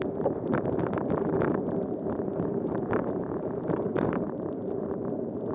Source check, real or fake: fake